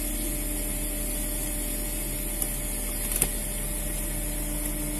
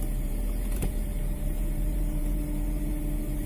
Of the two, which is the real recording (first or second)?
first